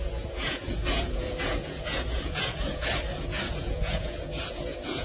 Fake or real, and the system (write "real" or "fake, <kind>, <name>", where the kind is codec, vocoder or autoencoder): fake, vocoder, Vocos